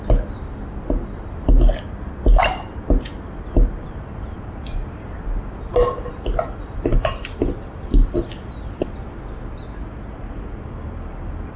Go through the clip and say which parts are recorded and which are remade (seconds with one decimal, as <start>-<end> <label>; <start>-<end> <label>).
0.0-6.9 recorded; 6.9-7.8 remade; 7.8-11.6 recorded